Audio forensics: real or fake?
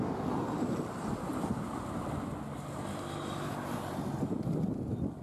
real